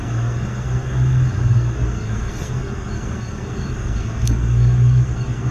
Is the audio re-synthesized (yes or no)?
yes